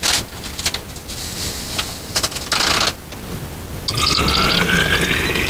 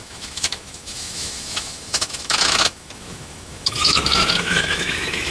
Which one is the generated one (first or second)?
second